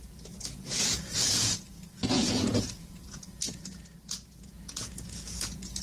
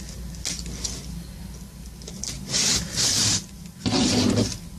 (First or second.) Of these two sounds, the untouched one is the second